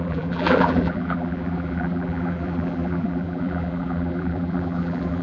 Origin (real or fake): fake